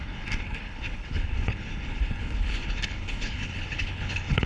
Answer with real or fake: fake